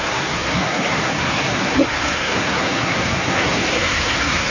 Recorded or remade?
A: remade